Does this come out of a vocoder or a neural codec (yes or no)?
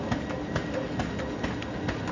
no